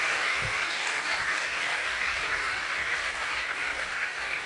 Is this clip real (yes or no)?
no